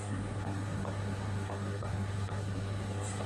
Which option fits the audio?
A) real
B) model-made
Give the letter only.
B